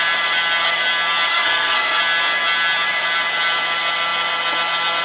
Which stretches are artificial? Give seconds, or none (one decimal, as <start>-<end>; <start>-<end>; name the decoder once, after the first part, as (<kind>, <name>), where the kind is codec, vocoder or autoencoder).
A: 1.3-2.0 (codec, SNAC)